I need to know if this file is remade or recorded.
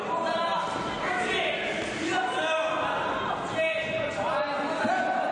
recorded